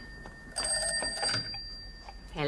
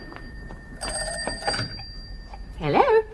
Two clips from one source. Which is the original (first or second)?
first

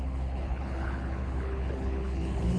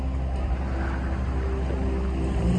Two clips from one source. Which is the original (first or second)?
second